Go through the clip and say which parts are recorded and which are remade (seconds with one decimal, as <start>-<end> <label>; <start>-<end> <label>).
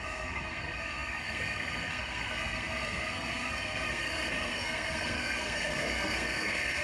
0.0-6.8 remade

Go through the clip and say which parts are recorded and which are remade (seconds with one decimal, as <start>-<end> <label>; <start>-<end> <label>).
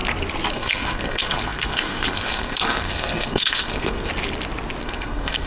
0.0-0.5 recorded; 0.5-4.1 remade; 4.1-4.8 recorded; 4.8-5.5 remade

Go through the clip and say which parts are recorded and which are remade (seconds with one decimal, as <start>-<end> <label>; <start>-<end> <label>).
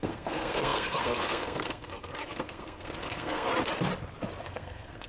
0.0-3.5 remade; 3.5-4.4 recorded; 4.4-5.1 remade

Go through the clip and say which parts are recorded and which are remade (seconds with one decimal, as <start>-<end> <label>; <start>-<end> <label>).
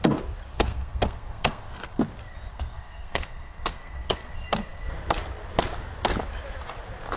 0.0-0.5 recorded; 0.5-2.0 remade; 2.0-2.5 recorded; 2.5-4.3 remade; 4.3-7.2 recorded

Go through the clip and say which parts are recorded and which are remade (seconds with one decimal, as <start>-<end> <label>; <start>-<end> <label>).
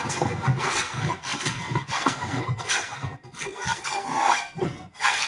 0.0-5.3 remade